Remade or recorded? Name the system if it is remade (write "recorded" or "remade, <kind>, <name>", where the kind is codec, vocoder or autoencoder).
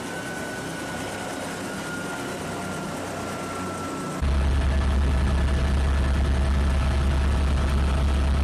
recorded